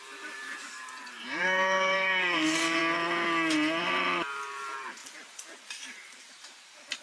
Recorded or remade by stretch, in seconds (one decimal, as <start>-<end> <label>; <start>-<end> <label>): 0.0-2.8 remade; 2.8-3.8 recorded; 3.8-7.0 remade